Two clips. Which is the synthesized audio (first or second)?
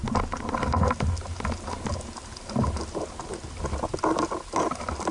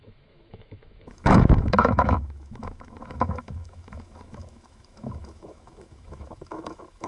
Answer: second